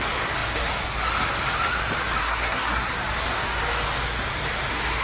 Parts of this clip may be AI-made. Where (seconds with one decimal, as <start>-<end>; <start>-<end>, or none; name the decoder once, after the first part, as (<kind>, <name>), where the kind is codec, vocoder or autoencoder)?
2.2-2.9 (codec, SNAC)